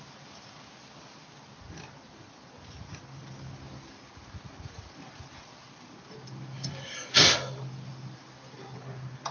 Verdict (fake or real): real